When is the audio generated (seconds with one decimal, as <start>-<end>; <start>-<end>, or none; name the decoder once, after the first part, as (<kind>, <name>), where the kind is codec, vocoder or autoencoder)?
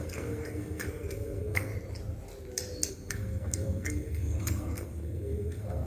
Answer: 0.0-1.7 (codec, SNAC); 2.9-5.9